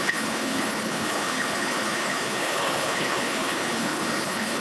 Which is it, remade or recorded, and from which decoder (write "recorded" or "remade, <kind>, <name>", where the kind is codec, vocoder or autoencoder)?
remade, codec, HILCodec